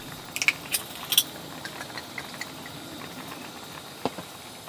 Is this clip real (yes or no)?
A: yes